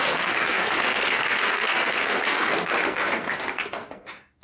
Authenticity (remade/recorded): remade